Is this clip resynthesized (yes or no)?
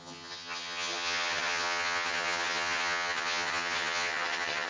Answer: yes